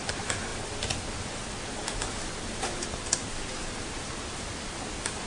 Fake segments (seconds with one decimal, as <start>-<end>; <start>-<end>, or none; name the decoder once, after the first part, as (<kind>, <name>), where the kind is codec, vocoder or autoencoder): none